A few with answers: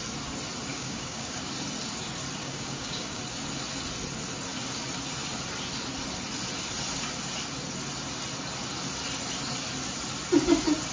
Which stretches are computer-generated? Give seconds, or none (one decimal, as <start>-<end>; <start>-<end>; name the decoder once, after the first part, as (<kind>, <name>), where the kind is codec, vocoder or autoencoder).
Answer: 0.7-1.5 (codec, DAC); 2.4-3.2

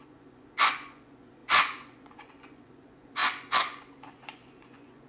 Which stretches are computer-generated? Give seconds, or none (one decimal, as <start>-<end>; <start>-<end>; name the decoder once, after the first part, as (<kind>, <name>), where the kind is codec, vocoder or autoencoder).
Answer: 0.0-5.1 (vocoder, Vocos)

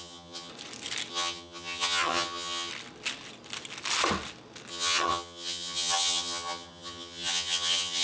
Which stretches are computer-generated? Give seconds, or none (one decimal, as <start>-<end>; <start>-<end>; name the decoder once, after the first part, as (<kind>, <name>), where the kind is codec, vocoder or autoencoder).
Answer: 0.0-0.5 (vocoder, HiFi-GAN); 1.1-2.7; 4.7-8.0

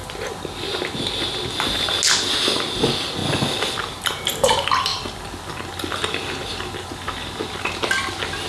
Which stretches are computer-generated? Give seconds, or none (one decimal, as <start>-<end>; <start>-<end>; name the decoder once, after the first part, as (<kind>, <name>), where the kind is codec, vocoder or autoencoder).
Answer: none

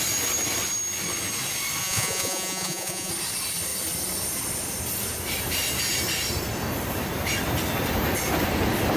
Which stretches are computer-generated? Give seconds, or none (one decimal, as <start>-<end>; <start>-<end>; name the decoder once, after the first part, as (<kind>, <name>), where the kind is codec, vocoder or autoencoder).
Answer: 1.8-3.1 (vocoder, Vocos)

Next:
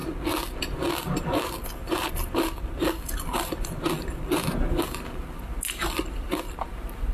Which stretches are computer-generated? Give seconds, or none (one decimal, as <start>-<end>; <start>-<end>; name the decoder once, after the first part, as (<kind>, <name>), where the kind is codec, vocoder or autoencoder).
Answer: none

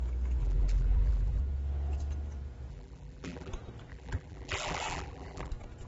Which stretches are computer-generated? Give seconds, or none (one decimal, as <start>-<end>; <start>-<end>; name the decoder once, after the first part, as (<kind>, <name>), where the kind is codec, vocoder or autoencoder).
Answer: 0.4-1.4 (vocoder, BigVGAN v2); 2.7-3.5; 3.9-5.5

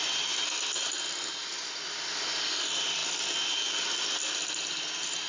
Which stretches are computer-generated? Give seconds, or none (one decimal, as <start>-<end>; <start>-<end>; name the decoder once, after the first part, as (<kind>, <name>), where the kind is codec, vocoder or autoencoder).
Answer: none